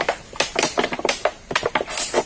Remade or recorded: recorded